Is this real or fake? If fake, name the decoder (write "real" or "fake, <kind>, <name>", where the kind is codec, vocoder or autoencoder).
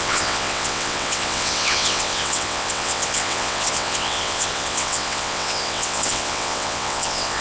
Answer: fake, vocoder, WaveNeXt